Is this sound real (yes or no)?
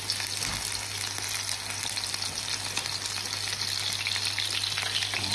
yes